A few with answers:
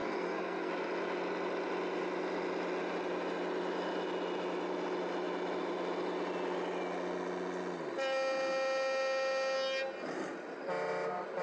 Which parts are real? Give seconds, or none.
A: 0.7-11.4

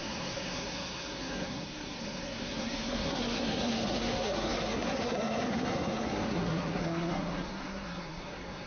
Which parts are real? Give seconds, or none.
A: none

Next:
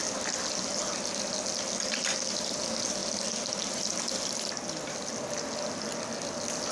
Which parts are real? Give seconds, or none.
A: 0.0-6.7

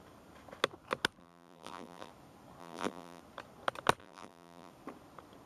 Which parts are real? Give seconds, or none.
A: 0.0-1.2; 2.1-2.6; 3.2-4.0; 4.7-5.5

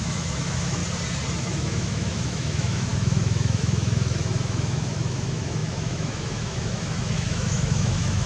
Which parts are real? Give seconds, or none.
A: 0.8-1.4

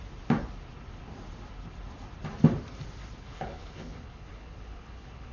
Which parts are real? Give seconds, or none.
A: 0.0-3.2

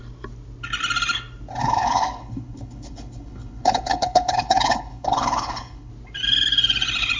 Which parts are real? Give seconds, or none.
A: 0.0-1.6; 5.9-7.2

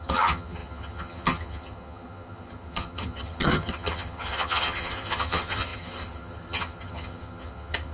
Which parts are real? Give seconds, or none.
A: none